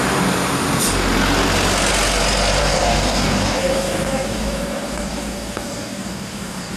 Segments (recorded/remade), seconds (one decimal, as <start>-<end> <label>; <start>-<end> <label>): 0.0-2.6 recorded; 2.6-6.8 remade